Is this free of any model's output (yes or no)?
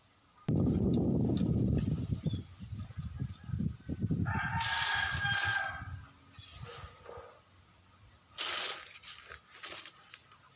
yes